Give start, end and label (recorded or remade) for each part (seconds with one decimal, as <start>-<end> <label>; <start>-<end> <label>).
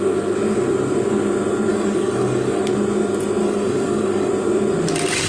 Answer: 0.0-1.7 recorded; 1.7-2.6 remade; 2.6-3.4 recorded; 3.4-4.3 remade; 4.3-5.3 recorded